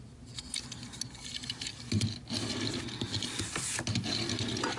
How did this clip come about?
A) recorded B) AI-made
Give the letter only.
A